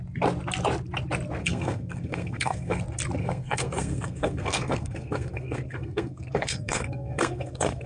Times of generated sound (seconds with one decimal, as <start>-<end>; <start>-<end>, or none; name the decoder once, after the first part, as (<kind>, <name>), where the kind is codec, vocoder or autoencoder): 1.4-2.8 (codec, SNAC); 3.2-7.9

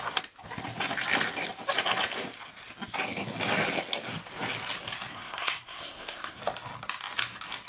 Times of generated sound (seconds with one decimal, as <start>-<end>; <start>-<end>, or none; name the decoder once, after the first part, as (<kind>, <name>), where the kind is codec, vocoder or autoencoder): 5.1-6.4 (codec, SNAC)

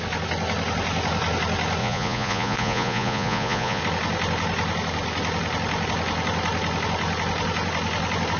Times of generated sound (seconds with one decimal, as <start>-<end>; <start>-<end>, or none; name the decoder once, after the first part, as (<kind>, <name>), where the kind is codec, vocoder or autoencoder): 1.8-3.8 (vocoder, Vocos)

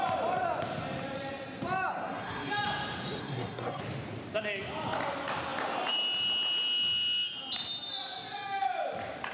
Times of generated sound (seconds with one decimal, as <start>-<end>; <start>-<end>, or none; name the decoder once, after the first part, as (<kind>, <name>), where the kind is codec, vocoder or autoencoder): 1.9-2.5 (codec, SNAC); 3.2-3.8

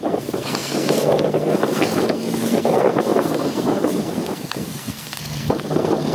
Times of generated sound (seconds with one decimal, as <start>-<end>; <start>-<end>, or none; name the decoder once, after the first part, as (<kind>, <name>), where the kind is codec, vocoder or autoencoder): 0.0-6.1 (codec, SNAC)

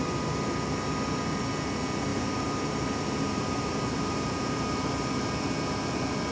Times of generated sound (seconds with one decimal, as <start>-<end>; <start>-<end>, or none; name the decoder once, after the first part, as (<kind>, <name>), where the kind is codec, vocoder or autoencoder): 2.1-5.1 (vocoder, BigVGAN v2)

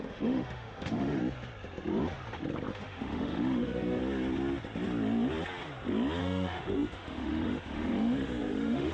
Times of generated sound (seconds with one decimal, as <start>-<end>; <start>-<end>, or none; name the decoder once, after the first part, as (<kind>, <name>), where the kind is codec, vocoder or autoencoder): 0.0-1.2 (autoencoder, DAC-VAE); 2.7-4.0; 6.2-8.9

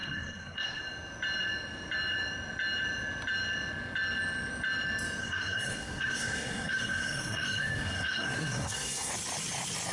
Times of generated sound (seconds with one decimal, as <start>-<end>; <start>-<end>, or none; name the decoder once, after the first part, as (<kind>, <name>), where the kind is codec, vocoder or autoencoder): 0.0-0.8 (codec, SNAC); 5.2-9.1